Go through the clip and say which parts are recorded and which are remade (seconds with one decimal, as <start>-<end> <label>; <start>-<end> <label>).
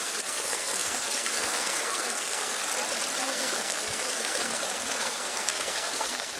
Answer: 0.0-2.6 remade; 2.6-3.2 recorded; 3.2-6.4 remade